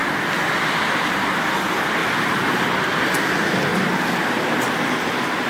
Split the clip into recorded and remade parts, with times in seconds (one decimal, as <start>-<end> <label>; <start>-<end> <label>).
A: 0.0-5.5 recorded